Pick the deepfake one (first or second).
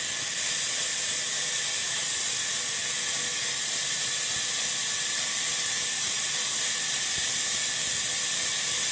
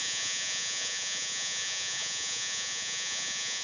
second